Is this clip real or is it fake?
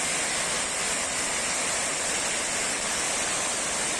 real